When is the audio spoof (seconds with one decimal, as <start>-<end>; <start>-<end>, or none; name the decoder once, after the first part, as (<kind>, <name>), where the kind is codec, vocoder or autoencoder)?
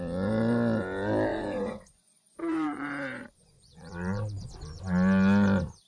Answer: 1.3-4.8 (vocoder, Vocos)